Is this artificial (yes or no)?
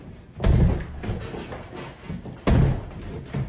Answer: no